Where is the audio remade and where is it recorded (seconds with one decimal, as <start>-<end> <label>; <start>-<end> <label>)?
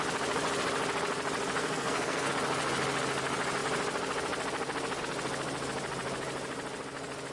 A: 0.0-1.6 recorded; 1.6-2.3 remade; 2.3-7.3 recorded